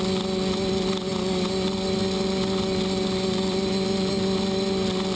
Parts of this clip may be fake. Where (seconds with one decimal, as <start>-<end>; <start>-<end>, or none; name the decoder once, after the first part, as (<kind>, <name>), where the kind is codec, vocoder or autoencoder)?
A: none

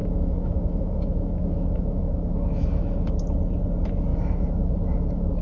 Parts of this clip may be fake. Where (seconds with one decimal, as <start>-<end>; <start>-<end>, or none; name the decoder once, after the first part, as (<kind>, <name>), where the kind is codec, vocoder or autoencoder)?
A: 0.0-3.1 (autoencoder, DAC-VAE); 4.1-5.4